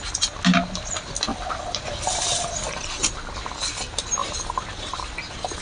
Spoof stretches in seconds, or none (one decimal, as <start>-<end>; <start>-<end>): 4.2-5.0